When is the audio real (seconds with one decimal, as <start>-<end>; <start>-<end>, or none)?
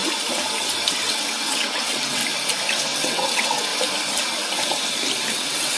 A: 0.0-0.9; 2.2-2.7; 3.7-5.3